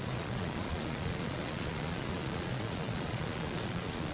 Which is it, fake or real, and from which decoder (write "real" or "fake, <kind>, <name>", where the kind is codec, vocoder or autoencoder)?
fake, vocoder, Vocos